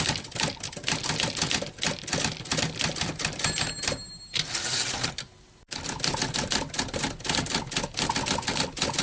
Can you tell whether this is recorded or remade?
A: recorded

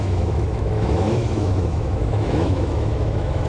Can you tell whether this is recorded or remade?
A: remade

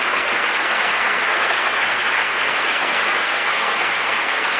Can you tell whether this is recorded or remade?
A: remade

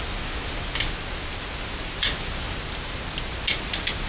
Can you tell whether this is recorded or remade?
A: recorded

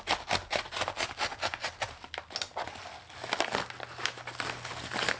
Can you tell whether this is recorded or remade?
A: recorded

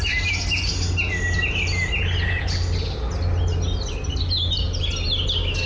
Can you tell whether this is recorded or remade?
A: recorded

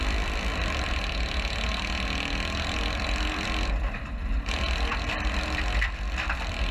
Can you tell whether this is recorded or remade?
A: remade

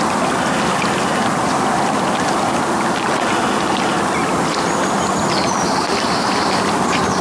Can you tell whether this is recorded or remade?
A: recorded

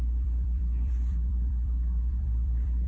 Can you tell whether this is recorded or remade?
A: remade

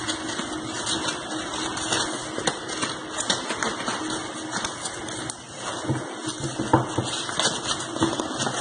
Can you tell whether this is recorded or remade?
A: recorded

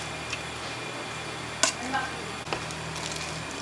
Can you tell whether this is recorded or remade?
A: recorded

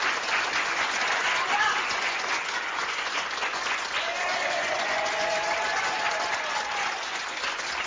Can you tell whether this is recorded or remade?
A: remade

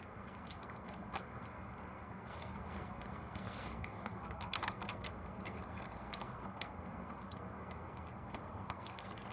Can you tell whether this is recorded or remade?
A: remade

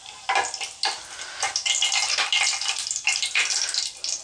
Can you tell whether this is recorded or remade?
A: recorded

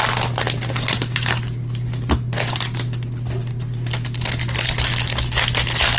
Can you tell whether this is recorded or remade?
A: recorded